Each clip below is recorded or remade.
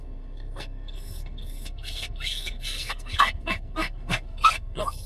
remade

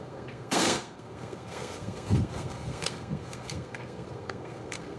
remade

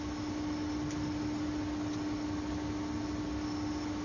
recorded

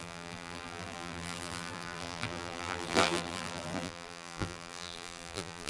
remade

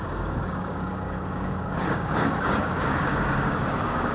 remade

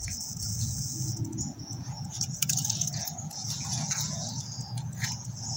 remade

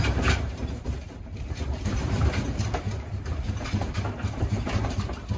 remade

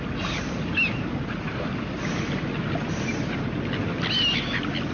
recorded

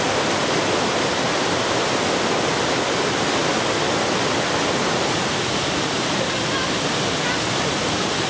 recorded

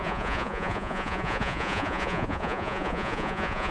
remade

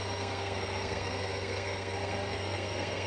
remade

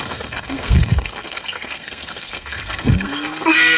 remade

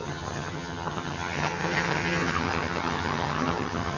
remade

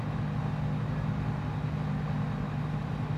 recorded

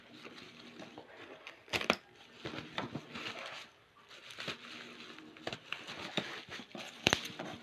recorded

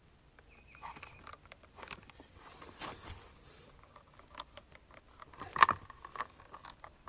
recorded